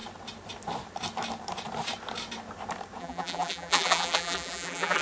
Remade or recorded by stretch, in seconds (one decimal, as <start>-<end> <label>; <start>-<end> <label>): 0.0-3.0 recorded; 3.0-5.0 remade